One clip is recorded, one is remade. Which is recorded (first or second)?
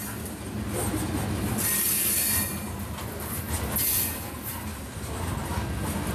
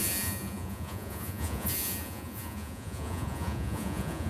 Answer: first